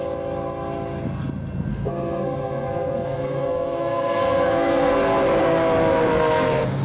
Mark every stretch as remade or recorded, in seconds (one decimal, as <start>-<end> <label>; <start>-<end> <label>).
0.0-1.7 recorded; 1.7-4.9 remade; 4.9-5.4 recorded; 5.4-6.8 remade